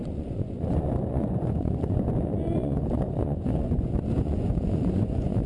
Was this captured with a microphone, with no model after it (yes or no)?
no